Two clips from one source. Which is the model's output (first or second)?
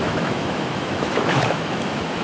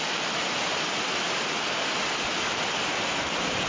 first